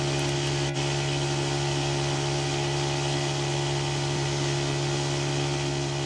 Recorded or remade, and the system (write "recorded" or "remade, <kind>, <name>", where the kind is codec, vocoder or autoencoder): recorded